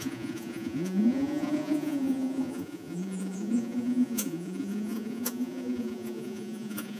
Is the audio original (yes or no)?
no